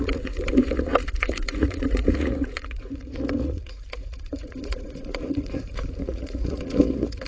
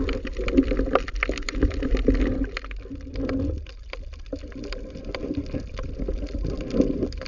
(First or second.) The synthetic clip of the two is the first